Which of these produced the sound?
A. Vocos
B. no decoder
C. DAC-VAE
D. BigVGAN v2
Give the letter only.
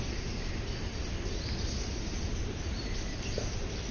B